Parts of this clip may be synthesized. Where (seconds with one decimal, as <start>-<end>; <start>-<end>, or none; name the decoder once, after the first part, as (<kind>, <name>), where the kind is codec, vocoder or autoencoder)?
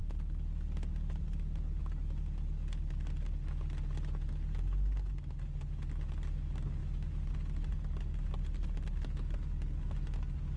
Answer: none